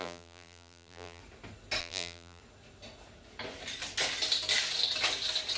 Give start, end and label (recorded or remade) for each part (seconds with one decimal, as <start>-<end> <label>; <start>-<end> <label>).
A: 0.0-1.2 remade; 1.2-1.8 recorded; 1.8-2.4 remade; 2.4-5.6 recorded